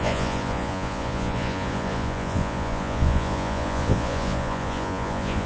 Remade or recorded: remade